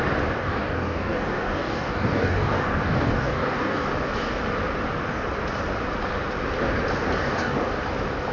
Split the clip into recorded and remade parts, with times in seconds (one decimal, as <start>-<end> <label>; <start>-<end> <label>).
0.0-0.4 recorded; 0.4-3.9 remade; 3.9-7.2 recorded; 7.2-7.7 remade; 7.7-8.3 recorded